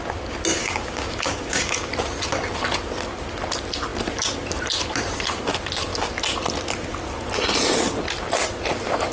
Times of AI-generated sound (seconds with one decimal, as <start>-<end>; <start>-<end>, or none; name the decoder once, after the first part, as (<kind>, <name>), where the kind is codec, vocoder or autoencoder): 0.6-1.9 (codec, DAC)